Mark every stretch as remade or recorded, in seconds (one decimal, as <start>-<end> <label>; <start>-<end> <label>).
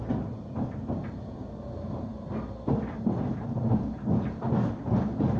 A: 0.0-5.4 recorded